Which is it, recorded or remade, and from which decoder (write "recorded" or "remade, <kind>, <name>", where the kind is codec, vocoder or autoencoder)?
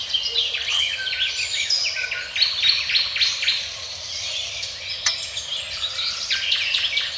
recorded